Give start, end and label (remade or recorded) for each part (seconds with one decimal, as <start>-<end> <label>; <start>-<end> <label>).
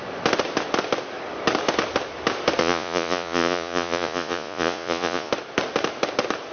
0.0-2.6 recorded; 2.6-5.3 remade; 5.3-6.5 recorded